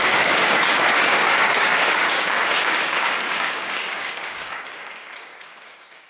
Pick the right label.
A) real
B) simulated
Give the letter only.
B